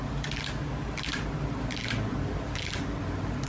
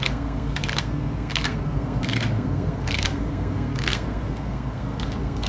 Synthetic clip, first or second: second